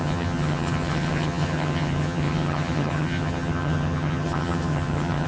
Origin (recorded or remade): remade